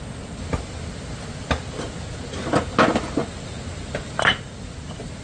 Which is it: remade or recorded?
recorded